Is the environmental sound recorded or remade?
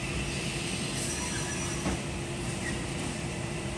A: remade